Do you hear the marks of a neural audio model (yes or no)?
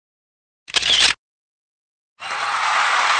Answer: no